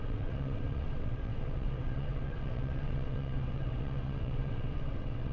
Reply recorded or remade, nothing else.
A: remade